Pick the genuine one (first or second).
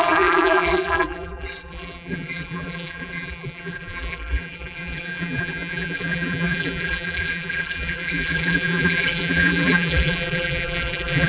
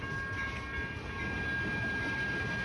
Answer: second